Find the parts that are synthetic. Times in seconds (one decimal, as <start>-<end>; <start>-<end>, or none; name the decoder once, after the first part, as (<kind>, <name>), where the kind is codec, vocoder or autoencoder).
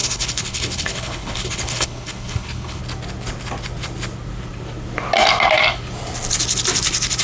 0.0-2.8 (codec, HILCodec)